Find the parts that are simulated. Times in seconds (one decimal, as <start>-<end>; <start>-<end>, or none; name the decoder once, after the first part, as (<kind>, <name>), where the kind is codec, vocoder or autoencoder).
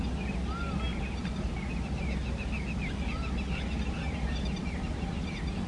none